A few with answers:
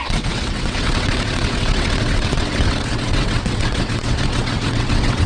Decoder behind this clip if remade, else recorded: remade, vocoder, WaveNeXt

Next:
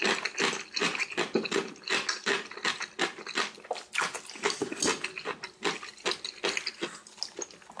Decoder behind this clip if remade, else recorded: recorded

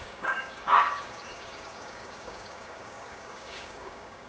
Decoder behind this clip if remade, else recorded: remade, codec, DAC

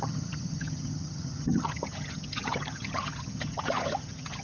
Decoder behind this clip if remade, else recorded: remade, vocoder, HiFi-GAN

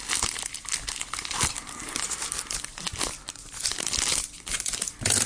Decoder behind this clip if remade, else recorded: recorded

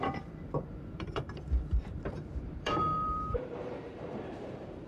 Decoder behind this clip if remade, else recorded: remade, vocoder, BigVGAN v2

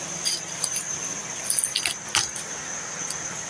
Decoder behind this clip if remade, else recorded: recorded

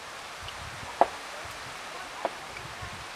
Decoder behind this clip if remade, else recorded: recorded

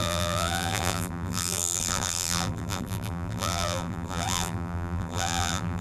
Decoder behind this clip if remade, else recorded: remade, vocoder, BigVGAN v2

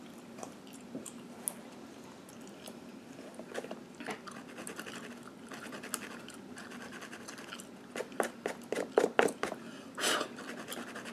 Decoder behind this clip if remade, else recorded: recorded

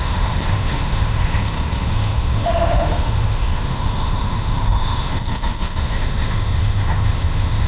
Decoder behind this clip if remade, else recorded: remade, autoencoder, DAC-VAE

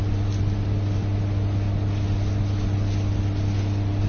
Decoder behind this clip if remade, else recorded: recorded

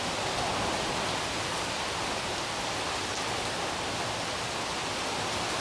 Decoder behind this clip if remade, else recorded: recorded